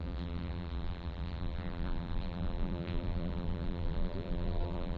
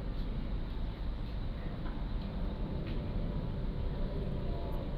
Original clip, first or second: second